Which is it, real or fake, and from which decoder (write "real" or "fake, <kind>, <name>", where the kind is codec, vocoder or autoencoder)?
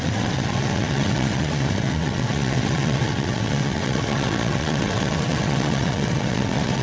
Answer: fake, vocoder, WaveNeXt